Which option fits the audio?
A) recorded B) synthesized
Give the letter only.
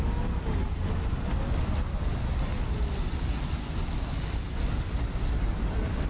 A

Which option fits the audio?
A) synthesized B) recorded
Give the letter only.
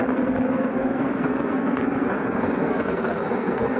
A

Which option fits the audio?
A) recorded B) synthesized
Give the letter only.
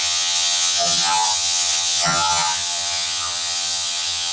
B